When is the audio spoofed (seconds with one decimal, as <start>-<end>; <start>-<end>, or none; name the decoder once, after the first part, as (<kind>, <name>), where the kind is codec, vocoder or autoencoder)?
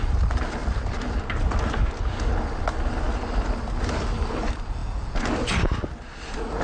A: none